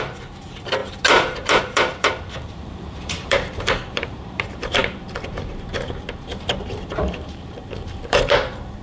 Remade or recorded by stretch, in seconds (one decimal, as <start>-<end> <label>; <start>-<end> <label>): 0.0-8.8 remade